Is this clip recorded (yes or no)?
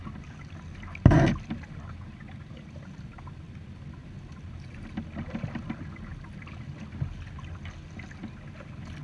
yes